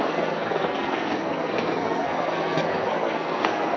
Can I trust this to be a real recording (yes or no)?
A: no